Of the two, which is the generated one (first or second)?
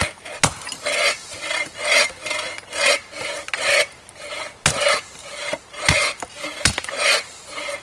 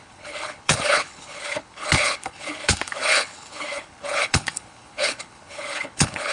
second